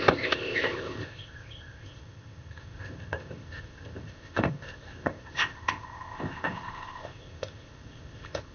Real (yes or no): no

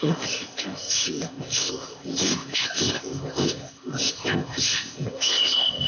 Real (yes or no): no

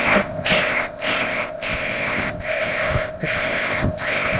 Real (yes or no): no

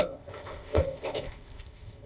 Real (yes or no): no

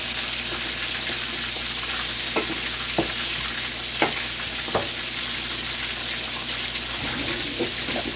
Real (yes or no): yes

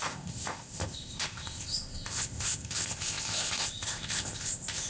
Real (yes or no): no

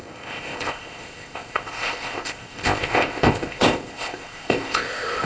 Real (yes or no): no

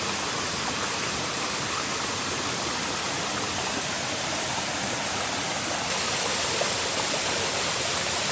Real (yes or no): yes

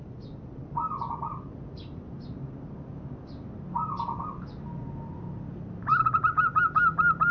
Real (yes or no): yes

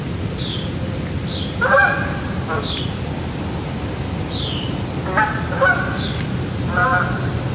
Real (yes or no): yes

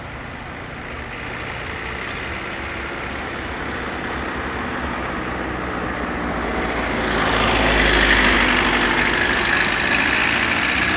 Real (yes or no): yes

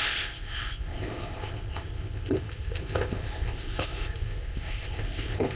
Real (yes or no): no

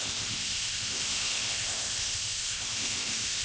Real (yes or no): no